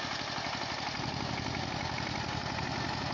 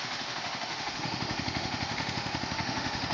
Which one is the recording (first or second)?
first